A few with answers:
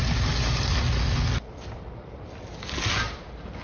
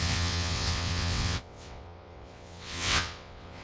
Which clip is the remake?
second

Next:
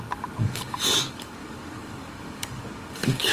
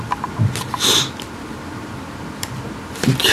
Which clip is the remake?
first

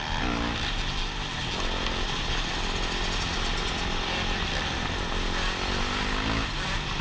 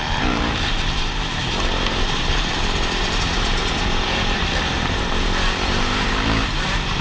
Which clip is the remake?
second